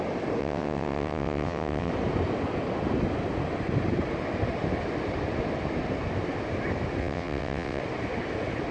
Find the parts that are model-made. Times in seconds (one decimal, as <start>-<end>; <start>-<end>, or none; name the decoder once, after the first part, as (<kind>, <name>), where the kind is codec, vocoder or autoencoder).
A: 0.4-1.9 (vocoder, WaveNeXt); 7.0-7.8